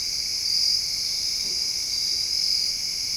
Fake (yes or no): no